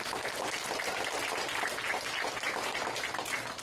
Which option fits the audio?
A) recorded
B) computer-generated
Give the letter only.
A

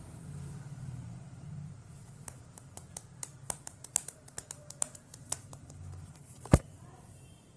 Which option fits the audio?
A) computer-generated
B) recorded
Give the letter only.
A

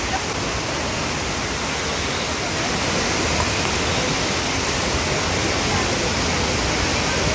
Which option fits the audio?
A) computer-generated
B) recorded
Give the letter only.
B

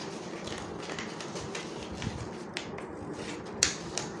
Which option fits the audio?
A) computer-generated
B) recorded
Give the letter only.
B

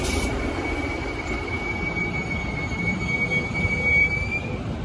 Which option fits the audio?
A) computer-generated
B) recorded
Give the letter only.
A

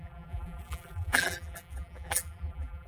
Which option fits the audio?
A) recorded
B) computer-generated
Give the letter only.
B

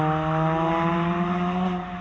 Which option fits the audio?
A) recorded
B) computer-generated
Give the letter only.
A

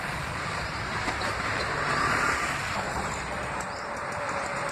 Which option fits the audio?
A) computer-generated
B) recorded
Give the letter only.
A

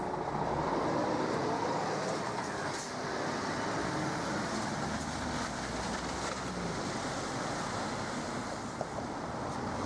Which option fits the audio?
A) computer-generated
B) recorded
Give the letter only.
B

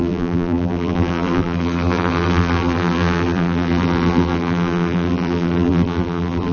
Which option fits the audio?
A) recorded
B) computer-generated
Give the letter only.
B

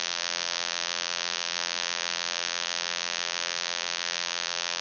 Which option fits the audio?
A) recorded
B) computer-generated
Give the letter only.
B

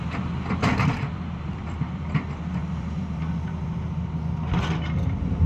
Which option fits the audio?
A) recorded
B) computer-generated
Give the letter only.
B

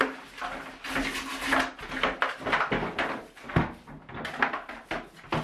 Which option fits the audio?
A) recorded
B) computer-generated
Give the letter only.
A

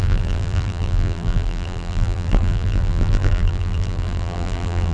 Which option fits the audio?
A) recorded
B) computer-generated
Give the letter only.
B